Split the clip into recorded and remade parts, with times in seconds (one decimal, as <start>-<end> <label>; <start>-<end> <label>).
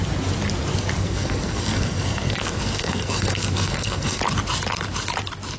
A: 0.0-1.0 recorded; 1.0-4.2 remade; 4.2-5.6 recorded